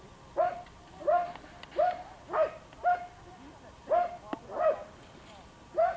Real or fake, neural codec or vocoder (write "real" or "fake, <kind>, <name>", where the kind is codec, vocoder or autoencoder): real